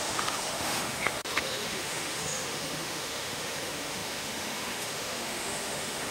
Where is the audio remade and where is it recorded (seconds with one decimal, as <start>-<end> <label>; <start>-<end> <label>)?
0.0-6.1 remade